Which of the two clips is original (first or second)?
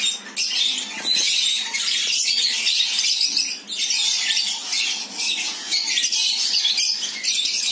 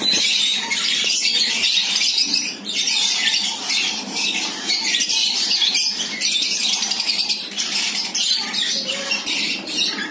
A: first